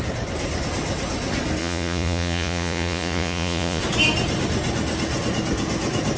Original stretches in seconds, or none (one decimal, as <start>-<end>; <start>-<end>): 0.0-1.6; 3.8-6.2